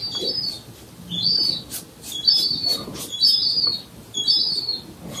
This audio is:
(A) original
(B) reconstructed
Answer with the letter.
A